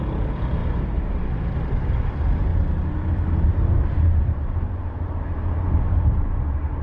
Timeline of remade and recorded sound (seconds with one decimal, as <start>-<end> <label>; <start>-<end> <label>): 0.0-2.5 remade; 2.5-3.1 recorded; 3.1-6.8 remade

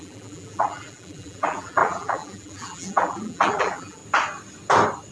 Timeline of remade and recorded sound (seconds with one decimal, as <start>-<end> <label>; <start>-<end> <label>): 0.0-4.0 remade; 4.0-5.1 recorded

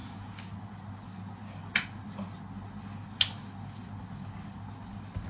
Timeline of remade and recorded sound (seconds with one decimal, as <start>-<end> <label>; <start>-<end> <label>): 0.0-5.3 recorded

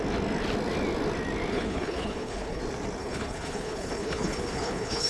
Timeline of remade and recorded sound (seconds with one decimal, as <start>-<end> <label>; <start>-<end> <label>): 0.0-1.5 recorded; 1.5-2.6 remade; 2.6-3.0 recorded; 3.0-5.1 remade

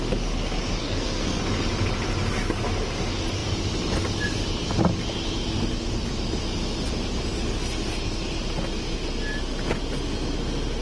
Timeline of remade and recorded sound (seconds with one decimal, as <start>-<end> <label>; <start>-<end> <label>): 0.0-0.8 recorded; 0.8-1.4 remade; 1.4-10.8 recorded